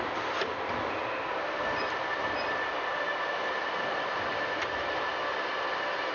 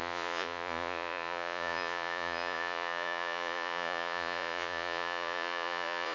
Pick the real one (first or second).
first